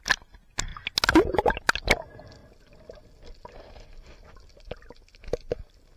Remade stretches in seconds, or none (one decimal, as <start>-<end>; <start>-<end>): none